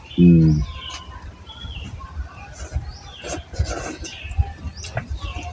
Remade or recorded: recorded